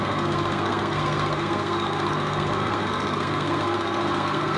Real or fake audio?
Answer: fake